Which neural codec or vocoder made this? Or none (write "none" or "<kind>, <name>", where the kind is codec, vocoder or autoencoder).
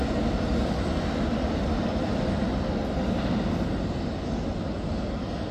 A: none